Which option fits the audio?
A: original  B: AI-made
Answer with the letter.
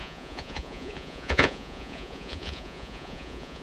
B